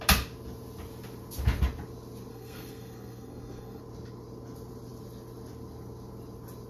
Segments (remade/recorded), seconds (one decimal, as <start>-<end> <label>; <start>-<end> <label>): 0.0-2.3 recorded; 2.3-3.8 remade; 3.8-6.7 recorded